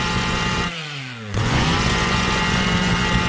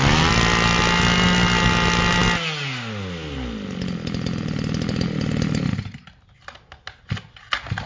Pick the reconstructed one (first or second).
first